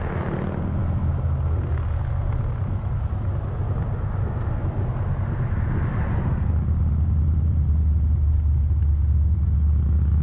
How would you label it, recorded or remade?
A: recorded